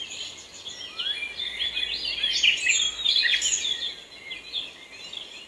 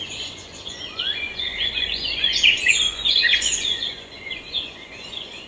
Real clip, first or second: first